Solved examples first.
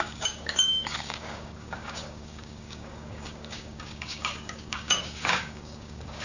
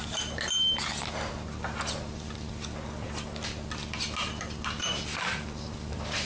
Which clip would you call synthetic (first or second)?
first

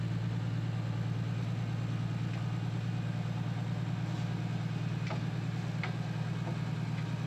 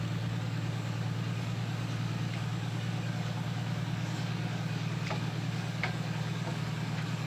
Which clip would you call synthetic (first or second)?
second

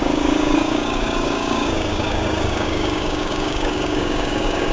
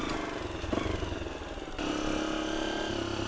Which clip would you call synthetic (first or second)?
first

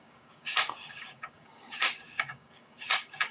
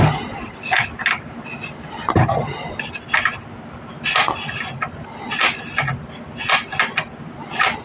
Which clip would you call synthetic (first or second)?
first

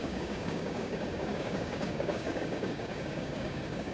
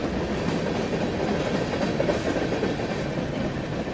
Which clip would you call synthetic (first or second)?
first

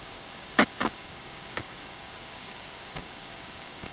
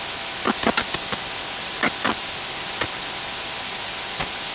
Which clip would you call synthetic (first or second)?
first